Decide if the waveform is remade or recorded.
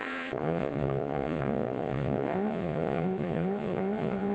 remade